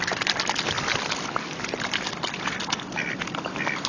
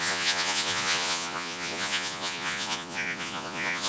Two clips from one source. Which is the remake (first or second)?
second